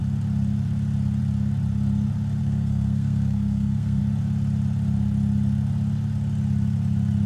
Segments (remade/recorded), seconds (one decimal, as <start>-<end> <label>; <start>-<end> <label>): 0.0-2.4 recorded; 2.4-4.0 remade; 4.0-7.3 recorded